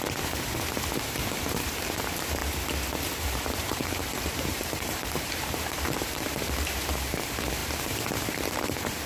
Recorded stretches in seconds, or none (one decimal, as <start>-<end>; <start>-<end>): 1.2-2.0; 2.4-3.2